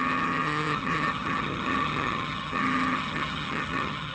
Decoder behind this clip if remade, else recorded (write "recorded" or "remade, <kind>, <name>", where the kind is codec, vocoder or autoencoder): remade, vocoder, HiFi-GAN